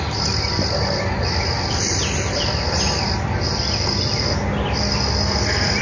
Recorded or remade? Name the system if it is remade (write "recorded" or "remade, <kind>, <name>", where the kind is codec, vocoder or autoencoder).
recorded